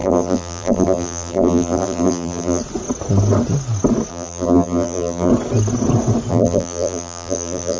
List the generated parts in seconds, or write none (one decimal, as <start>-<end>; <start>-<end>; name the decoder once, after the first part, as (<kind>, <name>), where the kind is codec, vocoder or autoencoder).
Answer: 0.0-2.6 (vocoder, BigVGAN v2); 4.1-5.3; 6.3-7.8